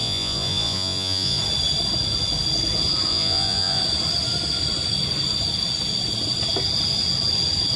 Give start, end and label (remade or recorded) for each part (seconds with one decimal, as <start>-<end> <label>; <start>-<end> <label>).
0.0-1.4 remade; 1.4-3.1 recorded; 3.1-3.8 remade; 3.8-7.8 recorded